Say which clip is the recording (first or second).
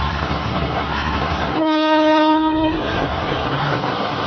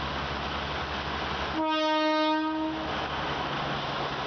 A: second